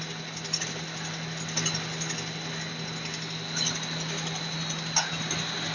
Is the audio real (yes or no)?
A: yes